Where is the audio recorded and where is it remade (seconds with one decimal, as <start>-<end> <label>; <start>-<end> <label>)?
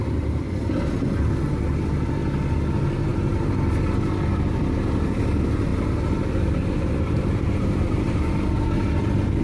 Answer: 0.0-0.6 remade; 0.6-5.7 recorded; 5.7-8.3 remade; 8.3-9.4 recorded